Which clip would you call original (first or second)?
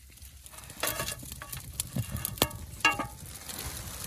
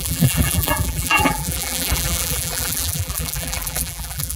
first